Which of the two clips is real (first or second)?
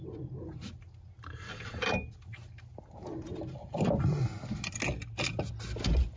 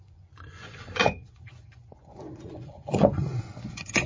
first